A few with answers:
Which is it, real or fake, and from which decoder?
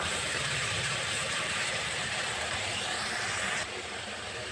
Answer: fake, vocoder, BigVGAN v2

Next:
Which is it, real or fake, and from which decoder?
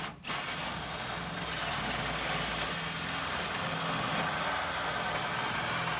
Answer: real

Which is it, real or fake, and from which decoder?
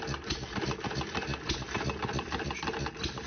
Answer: real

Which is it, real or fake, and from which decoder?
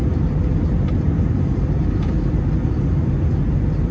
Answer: real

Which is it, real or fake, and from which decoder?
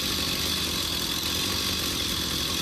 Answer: real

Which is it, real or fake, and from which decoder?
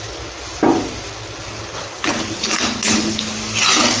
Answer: real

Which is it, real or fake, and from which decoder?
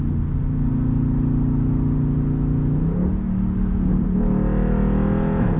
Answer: real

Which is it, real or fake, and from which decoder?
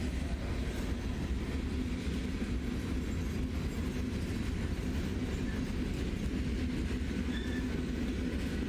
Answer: real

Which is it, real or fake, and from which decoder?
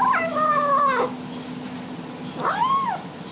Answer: real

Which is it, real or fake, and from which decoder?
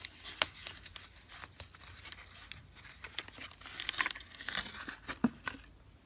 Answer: real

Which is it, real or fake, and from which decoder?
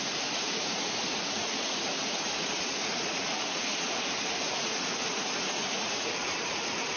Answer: fake, vocoder, Vocos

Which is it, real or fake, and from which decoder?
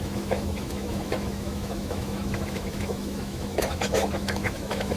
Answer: fake, autoencoder, DAC-VAE